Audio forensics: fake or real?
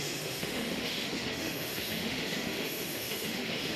fake